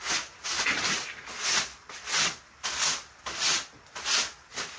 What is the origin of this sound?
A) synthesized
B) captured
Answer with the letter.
B